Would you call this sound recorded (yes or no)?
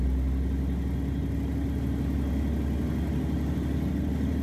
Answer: yes